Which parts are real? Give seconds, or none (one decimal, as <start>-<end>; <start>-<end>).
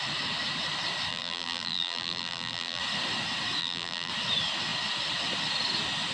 0.0-1.1; 2.8-3.6; 4.1-6.1